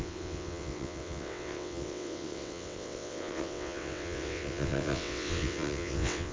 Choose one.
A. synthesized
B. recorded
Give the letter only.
A